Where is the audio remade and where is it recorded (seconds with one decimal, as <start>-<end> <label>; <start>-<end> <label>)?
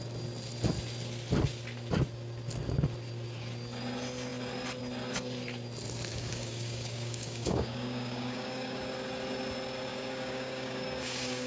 0.0-6.1 recorded; 6.1-8.8 remade; 8.8-9.9 recorded; 9.9-11.5 remade